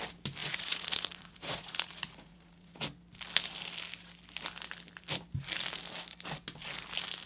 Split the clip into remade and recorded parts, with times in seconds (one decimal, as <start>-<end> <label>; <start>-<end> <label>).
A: 0.0-0.4 recorded; 0.4-2.8 remade; 2.8-7.3 recorded